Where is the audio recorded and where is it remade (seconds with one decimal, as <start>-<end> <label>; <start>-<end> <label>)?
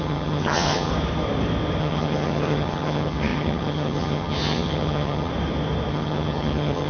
0.0-0.9 remade; 0.9-1.8 recorded; 1.8-5.3 remade; 5.3-5.9 recorded; 5.9-6.9 remade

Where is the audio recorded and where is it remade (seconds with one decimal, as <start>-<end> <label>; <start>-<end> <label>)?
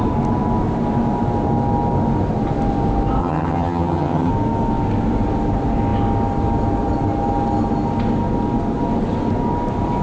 0.0-3.2 recorded; 3.2-4.3 remade; 4.3-10.0 recorded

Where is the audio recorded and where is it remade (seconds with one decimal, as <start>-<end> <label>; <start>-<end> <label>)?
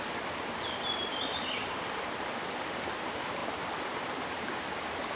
0.0-5.2 recorded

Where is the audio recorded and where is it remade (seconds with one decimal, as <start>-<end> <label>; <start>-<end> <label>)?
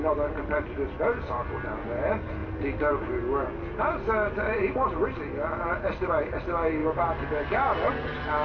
0.0-8.4 recorded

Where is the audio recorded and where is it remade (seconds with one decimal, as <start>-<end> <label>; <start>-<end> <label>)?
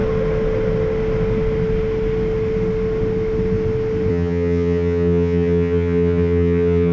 0.0-4.1 recorded; 4.1-6.9 remade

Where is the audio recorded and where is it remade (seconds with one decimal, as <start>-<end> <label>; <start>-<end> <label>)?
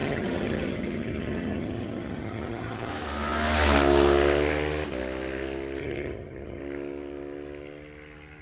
0.0-2.9 remade; 2.9-5.8 recorded; 5.8-6.6 remade; 6.6-8.4 recorded